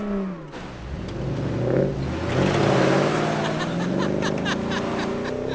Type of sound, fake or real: real